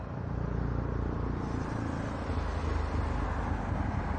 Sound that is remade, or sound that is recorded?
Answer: recorded